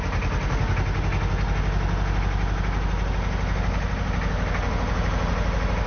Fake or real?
real